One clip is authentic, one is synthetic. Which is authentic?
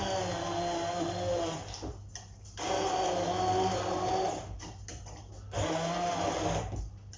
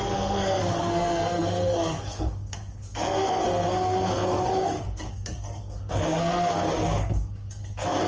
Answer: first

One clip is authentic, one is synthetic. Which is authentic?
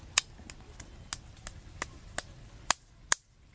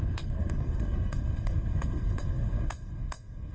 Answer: first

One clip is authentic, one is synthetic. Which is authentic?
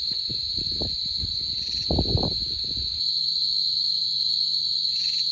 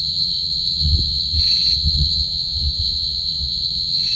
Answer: first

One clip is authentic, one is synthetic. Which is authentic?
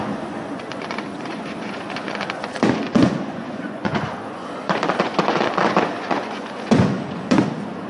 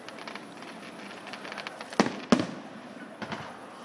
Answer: second